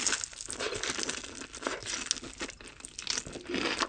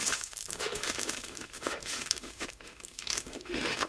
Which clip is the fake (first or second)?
second